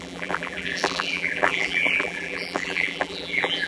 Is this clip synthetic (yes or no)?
yes